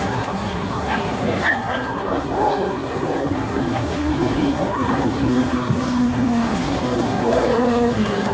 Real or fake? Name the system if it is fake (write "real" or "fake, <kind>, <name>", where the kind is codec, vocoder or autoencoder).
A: fake, codec, SNAC